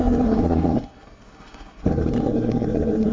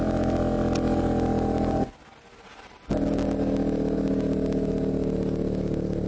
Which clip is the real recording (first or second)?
second